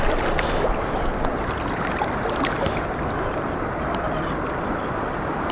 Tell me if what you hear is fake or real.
real